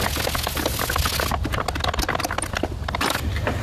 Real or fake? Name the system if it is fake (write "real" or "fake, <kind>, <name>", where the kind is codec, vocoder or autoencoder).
real